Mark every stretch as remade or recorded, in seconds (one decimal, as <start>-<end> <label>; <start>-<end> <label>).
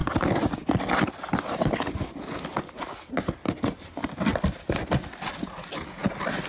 0.0-6.5 recorded